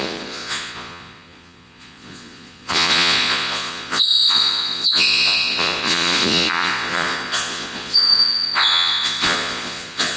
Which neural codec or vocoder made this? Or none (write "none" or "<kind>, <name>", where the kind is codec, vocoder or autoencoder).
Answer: vocoder, Vocos